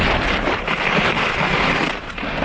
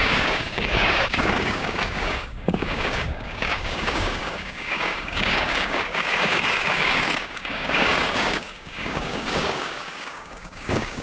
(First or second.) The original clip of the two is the first